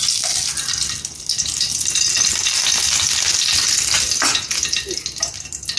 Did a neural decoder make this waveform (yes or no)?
no